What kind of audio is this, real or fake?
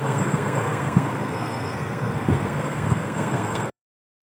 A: fake